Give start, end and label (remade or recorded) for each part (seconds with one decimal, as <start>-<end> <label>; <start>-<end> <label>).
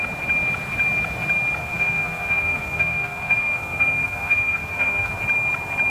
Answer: 0.0-1.6 recorded; 1.6-5.1 remade; 5.1-5.9 recorded